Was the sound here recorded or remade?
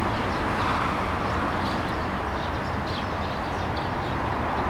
recorded